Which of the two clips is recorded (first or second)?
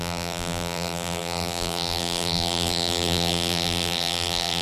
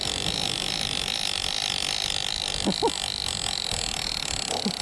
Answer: second